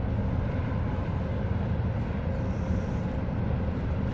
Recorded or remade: recorded